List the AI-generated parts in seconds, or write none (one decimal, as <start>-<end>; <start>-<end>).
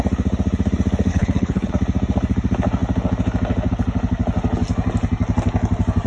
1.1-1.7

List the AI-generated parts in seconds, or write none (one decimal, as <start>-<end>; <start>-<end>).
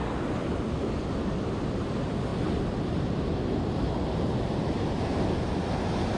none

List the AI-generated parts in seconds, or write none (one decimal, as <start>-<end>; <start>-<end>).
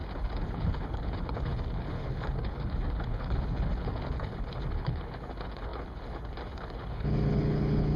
0.0-8.0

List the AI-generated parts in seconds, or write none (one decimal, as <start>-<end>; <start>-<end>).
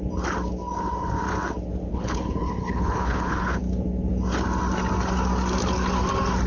1.9-3.6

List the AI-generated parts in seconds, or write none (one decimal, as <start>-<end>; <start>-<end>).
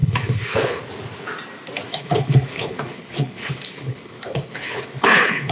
0.0-0.8; 1.9-5.5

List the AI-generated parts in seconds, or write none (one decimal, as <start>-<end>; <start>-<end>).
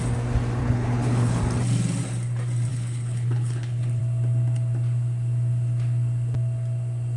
0.6-1.4; 2.7-4.0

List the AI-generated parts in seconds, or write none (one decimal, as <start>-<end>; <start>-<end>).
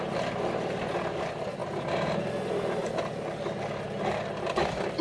none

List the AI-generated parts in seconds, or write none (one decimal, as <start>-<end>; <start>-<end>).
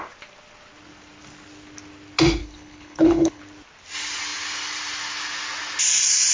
2.4-3.4